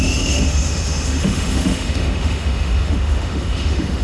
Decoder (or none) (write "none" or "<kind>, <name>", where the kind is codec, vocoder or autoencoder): autoencoder, DAC-VAE